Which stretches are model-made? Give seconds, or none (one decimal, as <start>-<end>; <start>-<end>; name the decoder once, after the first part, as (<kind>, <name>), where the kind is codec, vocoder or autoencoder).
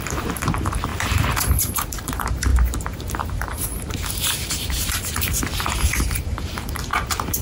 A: 0.0-7.4 (vocoder, BigVGAN v2)